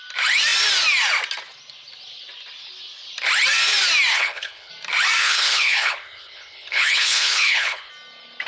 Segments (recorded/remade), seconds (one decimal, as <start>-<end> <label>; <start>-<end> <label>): 0.0-4.1 recorded; 4.1-4.7 remade; 4.7-5.2 recorded; 5.2-7.9 remade; 7.9-8.5 recorded

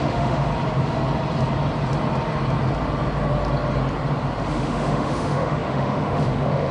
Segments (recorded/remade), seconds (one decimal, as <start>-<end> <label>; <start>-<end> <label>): 0.0-0.5 remade; 0.5-4.5 recorded; 4.5-6.7 remade

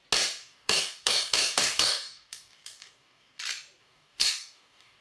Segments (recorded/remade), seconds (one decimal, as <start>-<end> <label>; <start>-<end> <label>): 0.0-0.4 recorded; 0.4-3.4 remade; 3.4-3.8 recorded; 3.8-5.0 remade

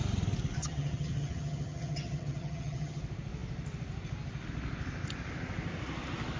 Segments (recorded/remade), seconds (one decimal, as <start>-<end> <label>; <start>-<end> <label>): 0.0-0.6 recorded; 0.6-3.0 remade; 3.0-6.4 recorded

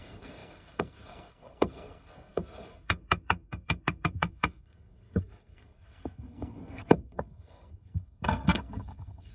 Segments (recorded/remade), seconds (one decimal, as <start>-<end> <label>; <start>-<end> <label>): 0.0-9.3 remade

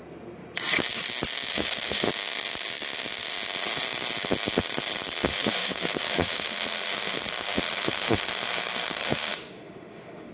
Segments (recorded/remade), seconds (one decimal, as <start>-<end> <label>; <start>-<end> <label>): 0.0-1.5 recorded; 1.5-2.1 remade; 2.1-5.3 recorded; 5.3-10.3 remade